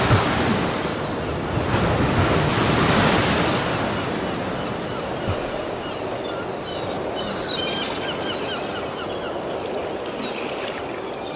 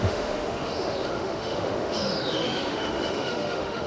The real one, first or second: first